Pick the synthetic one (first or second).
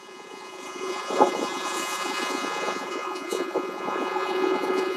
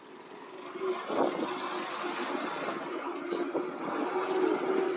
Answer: first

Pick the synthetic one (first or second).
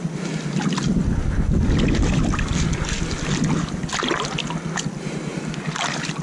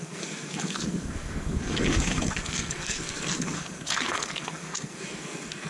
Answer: second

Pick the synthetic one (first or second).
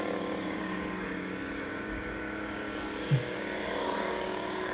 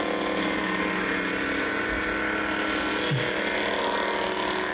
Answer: first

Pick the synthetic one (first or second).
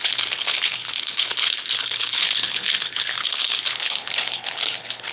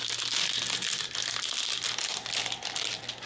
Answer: first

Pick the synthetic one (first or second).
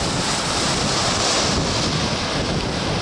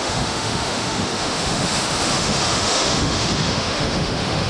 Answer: second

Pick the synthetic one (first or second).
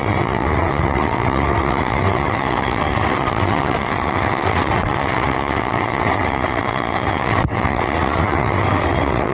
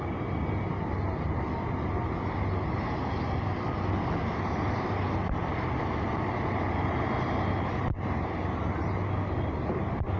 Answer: first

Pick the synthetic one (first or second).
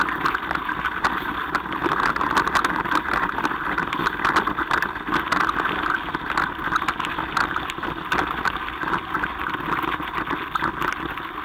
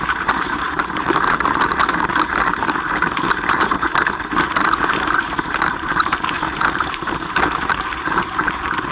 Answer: second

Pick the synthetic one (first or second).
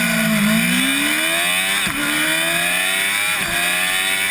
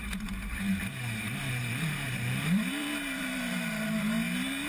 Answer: second